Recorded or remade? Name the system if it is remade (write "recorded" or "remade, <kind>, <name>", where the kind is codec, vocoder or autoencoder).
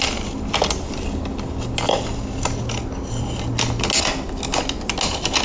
recorded